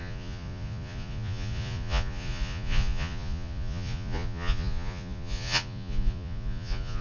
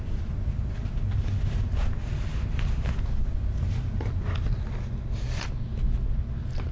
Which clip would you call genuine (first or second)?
second